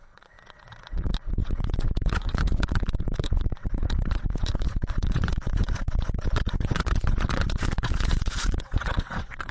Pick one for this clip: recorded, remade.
remade